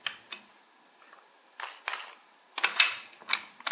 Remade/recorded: recorded